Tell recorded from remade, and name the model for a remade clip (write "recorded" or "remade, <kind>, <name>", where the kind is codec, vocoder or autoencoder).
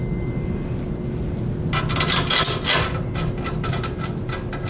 recorded